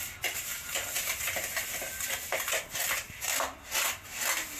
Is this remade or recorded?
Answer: recorded